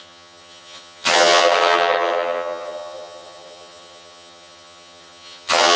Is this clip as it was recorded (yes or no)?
no